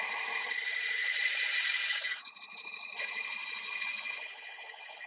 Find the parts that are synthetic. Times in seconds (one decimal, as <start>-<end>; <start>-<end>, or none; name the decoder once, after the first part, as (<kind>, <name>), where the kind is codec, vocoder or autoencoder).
3.4-4.6 (vocoder, Vocos)